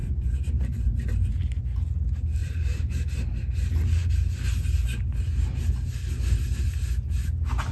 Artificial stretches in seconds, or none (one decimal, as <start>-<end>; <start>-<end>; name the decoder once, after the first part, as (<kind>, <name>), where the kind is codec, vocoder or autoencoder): 0.0-1.6 (vocoder, BigVGAN v2); 2.4-3.4